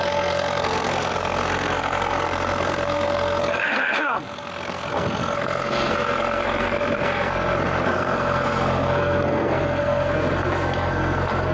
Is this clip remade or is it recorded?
remade